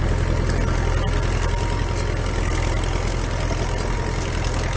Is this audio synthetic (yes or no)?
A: no